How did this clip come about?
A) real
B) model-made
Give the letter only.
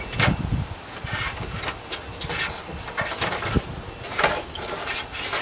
A